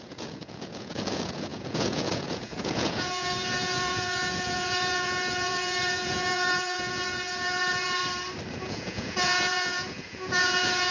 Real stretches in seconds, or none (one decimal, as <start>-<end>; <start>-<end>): 8.0-8.6